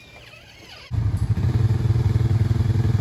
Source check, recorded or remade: recorded